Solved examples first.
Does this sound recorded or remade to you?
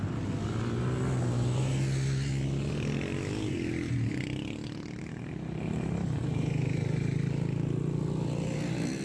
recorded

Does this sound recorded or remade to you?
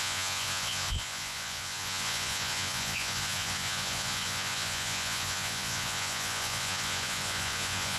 remade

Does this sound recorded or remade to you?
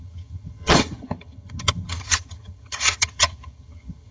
remade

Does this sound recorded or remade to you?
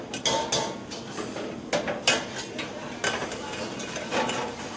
recorded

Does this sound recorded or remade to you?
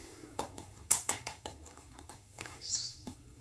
remade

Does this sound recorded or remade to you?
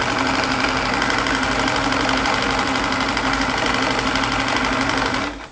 recorded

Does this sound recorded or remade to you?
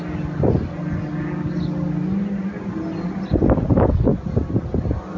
recorded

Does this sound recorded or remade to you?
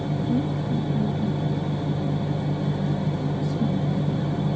recorded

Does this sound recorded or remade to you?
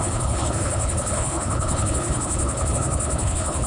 remade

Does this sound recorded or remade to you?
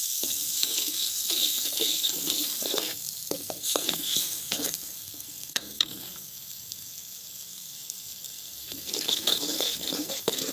remade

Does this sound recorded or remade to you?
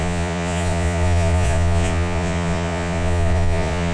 remade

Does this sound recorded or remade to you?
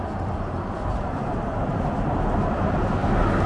recorded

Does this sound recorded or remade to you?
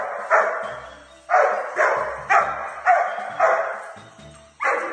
recorded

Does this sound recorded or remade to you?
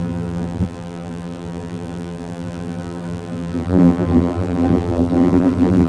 remade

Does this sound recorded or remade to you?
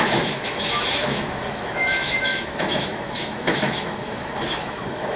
remade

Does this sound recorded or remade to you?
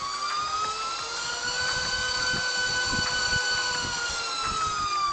recorded